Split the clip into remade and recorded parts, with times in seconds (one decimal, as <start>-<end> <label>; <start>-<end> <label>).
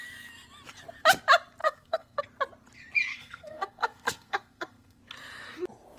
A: 0.0-1.6 recorded; 1.6-2.2 remade; 2.2-3.1 recorded; 3.1-5.0 remade; 5.0-6.0 recorded